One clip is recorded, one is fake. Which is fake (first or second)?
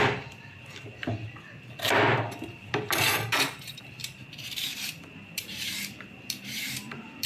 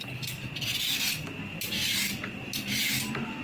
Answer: first